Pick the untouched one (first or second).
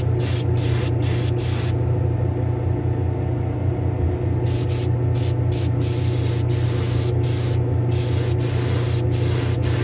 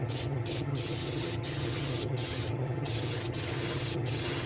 first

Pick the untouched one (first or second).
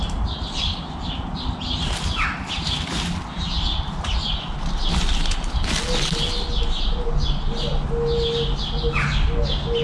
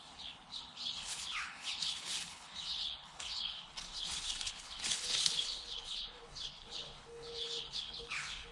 first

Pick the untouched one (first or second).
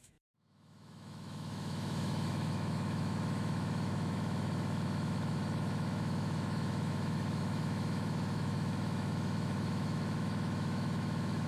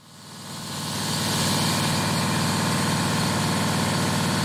second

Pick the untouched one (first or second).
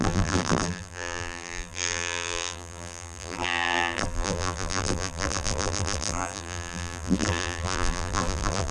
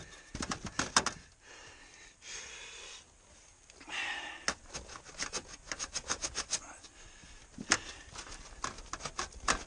second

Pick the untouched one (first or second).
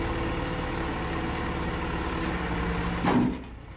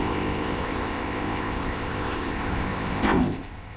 first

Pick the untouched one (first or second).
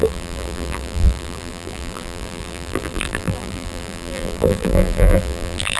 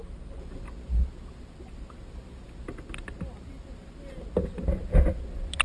second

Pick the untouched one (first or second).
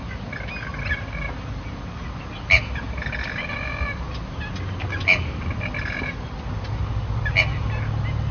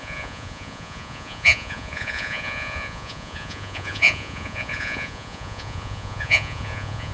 first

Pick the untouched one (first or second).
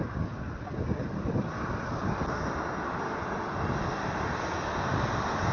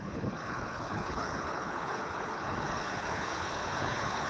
first